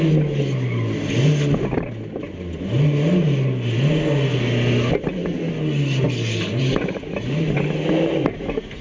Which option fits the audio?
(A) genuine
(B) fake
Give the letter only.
A